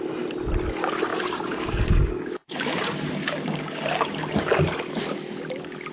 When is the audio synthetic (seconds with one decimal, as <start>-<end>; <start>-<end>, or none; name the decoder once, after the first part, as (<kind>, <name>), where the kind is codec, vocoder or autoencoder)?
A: 1.1-4.6 (codec, DAC)

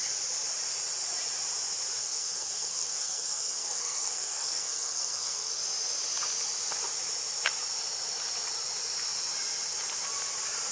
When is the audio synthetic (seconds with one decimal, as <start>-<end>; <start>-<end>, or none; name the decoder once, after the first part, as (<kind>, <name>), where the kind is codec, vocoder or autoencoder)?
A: 2.0-5.6 (codec, SNAC)

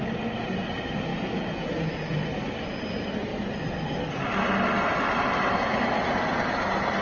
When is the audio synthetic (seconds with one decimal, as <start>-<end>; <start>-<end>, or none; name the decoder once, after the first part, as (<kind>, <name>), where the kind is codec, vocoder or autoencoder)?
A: 1.1-1.7 (vocoder, Vocos)

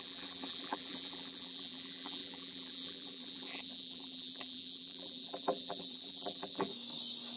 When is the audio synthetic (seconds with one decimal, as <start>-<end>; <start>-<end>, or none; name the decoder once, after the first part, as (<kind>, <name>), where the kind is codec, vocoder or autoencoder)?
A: 0.0-6.7 (vocoder, BigVGAN v2)